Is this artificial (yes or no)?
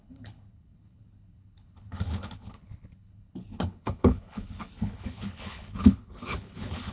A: yes